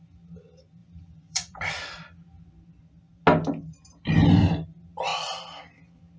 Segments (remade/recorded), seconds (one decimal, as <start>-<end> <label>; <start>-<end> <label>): 0.0-0.8 recorded; 0.8-1.7 remade; 1.7-5.1 recorded; 5.1-5.6 remade; 5.6-6.2 recorded